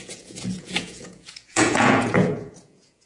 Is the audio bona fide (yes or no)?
no